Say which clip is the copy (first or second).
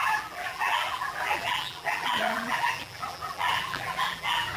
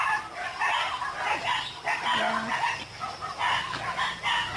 first